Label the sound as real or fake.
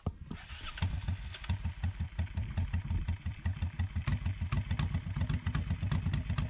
real